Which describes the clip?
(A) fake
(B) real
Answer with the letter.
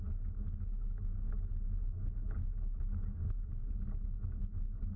B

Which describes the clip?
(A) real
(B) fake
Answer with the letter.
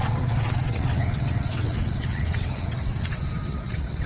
B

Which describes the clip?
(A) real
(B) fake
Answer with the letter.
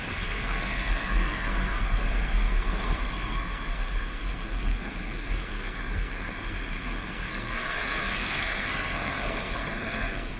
B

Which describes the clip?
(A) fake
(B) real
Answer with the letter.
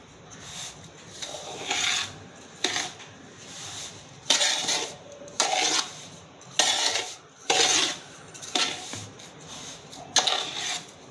B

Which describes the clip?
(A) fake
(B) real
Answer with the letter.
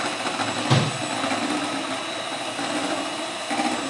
B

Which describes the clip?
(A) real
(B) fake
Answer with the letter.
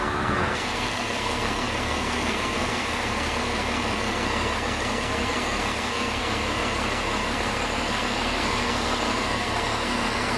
B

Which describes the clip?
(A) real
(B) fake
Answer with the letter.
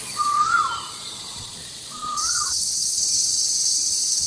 B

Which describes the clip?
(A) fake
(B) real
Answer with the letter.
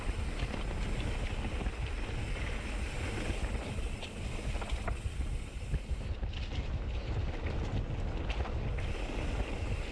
B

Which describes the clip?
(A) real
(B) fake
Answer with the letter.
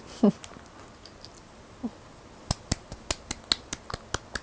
A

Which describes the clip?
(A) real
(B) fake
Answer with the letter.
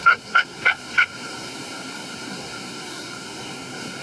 B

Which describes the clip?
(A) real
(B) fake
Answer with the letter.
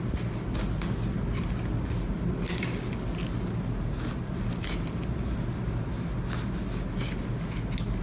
A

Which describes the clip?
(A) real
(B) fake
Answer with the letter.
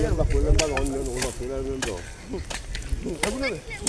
A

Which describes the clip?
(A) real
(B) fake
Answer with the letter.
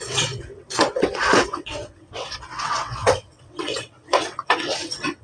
B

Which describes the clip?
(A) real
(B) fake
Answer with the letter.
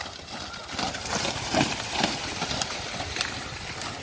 A